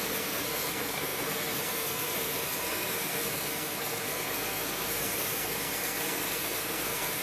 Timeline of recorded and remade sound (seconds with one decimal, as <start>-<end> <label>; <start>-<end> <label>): 0.0-7.2 remade

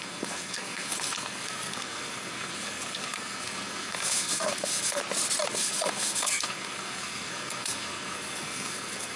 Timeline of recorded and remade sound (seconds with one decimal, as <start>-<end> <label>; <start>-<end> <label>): 0.0-5.0 remade; 5.0-5.5 recorded; 5.5-9.2 remade

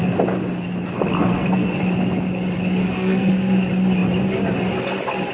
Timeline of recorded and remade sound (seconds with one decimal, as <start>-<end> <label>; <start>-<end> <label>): 0.0-1.2 recorded; 1.2-1.8 remade; 1.8-2.8 recorded; 2.8-3.3 remade; 3.3-5.3 recorded

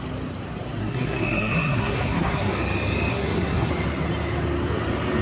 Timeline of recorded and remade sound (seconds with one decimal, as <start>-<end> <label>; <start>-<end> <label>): 0.0-0.8 recorded; 0.8-2.5 remade; 2.5-3.1 recorded; 3.1-3.7 remade; 3.7-5.2 recorded

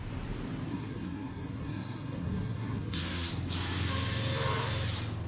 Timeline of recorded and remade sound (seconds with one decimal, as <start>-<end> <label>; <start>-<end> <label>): 0.0-0.7 recorded; 0.7-3.3 remade; 3.3-5.3 recorded